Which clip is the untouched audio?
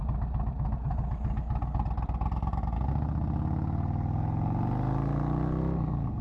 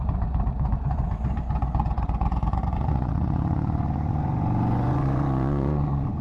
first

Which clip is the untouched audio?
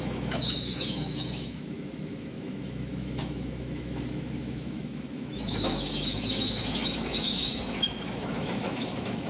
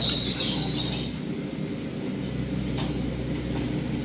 second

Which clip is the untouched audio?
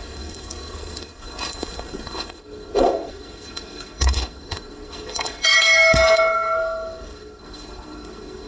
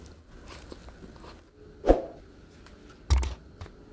second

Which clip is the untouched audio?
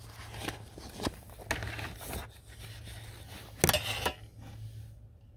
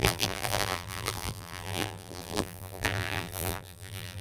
first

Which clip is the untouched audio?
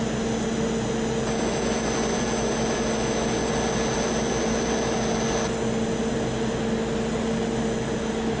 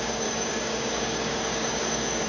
first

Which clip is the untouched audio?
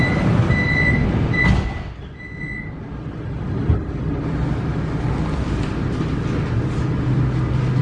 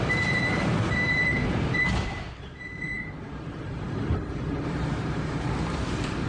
first